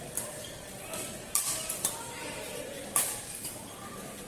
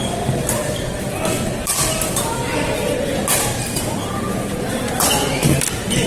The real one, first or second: second